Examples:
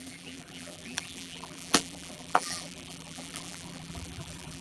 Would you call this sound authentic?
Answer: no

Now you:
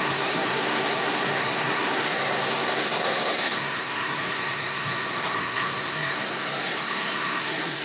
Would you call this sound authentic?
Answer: no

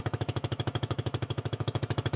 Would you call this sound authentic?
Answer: no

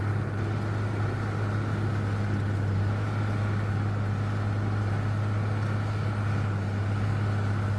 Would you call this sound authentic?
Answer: yes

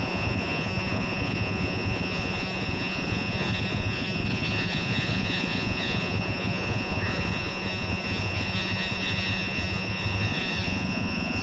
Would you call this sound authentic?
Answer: no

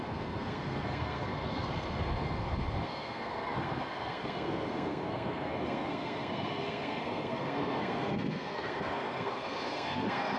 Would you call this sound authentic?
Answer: no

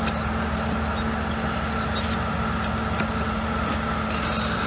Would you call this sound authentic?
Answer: yes